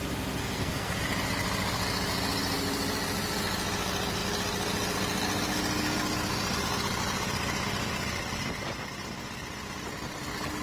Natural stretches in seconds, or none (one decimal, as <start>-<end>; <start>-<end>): 0.0-0.4; 1.0-10.6